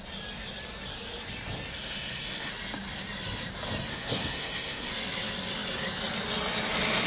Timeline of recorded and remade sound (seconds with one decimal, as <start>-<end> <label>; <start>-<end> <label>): 0.0-1.7 recorded; 1.7-2.5 remade; 2.5-3.9 recorded; 3.9-4.9 remade; 4.9-7.1 recorded